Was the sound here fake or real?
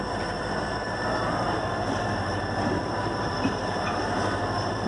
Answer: fake